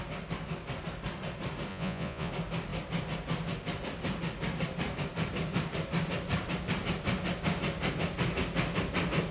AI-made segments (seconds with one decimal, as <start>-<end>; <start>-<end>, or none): 1.7-2.3